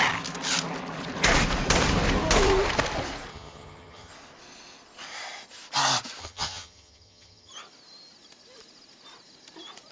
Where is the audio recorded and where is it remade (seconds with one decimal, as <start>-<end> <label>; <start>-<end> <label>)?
0.0-3.3 recorded; 3.3-4.1 remade; 4.1-6.2 recorded; 6.2-7.5 remade; 7.5-9.9 recorded